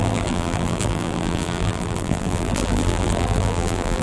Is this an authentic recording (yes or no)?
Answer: no